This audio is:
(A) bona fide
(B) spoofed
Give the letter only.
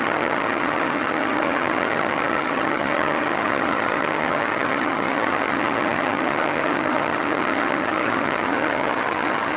B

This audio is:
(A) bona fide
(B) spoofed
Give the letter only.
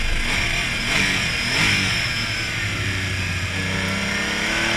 A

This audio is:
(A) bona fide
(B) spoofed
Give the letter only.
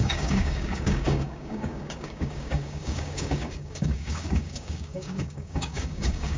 B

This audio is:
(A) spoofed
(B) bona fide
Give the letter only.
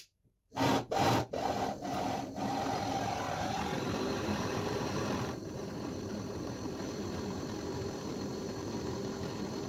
A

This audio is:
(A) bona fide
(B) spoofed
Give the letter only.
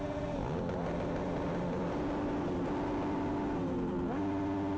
A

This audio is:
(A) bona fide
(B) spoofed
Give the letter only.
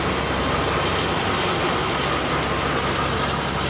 A